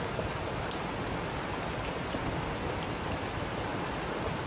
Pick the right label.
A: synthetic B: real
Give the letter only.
B